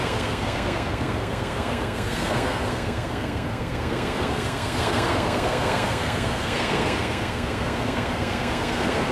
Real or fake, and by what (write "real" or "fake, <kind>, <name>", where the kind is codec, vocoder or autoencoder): fake, codec, SNAC